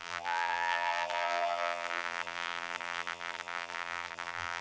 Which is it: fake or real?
fake